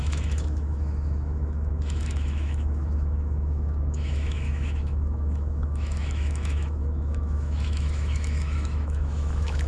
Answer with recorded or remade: remade